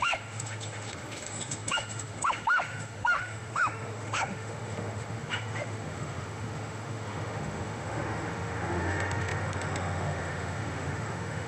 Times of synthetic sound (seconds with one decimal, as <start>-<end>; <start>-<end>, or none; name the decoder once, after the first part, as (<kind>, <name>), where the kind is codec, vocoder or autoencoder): 0.0-11.5 (autoencoder, DAC-VAE)